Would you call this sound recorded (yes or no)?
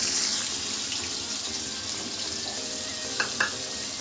yes